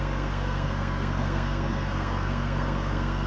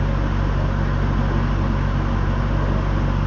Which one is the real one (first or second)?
second